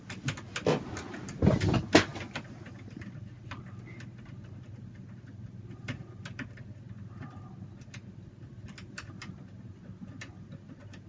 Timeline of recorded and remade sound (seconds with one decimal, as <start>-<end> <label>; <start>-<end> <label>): 0.0-11.1 recorded